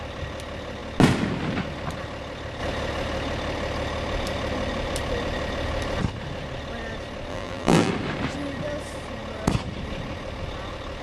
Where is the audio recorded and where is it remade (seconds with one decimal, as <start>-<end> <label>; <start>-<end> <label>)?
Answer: 0.0-7.3 recorded; 7.3-7.9 remade; 7.9-11.0 recorded